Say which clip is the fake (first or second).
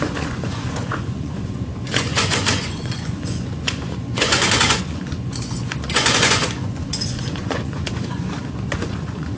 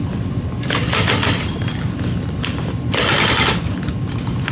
first